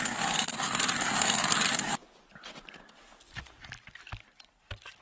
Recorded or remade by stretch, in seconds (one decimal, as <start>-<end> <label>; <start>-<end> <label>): 0.0-2.0 remade; 2.0-4.0 recorded; 4.0-5.0 remade

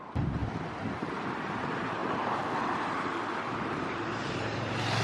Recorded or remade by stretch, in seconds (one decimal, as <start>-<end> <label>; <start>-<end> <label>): 0.0-0.4 remade; 0.4-1.0 recorded; 1.0-2.0 remade; 2.0-2.6 recorded; 2.6-5.0 remade

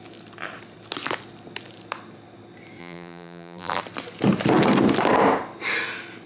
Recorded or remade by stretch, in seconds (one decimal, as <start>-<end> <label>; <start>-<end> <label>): 0.0-2.8 recorded; 2.8-3.8 remade; 3.8-6.3 recorded

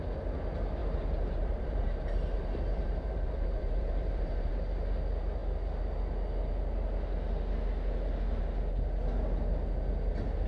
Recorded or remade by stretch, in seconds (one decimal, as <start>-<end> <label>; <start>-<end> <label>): 0.0-0.8 recorded; 0.8-4.5 remade; 4.5-10.5 recorded

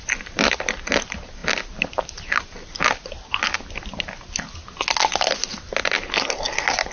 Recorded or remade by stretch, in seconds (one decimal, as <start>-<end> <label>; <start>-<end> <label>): 0.0-6.9 recorded

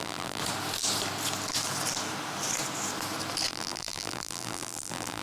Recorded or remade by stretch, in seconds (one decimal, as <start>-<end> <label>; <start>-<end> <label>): 0.0-0.4 remade; 0.4-3.5 recorded; 3.5-5.2 remade